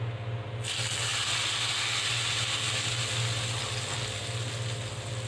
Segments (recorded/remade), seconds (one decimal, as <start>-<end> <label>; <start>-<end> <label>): 0.0-5.3 recorded